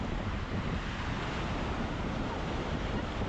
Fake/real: real